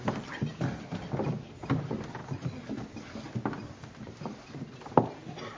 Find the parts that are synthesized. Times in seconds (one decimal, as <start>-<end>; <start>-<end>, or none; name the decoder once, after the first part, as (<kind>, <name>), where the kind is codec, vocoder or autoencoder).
none

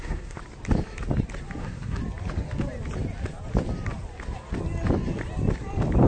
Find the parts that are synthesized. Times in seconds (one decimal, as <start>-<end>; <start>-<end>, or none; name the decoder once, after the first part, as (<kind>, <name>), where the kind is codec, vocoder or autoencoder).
0.0-0.4 (codec, SNAC); 1.6-2.0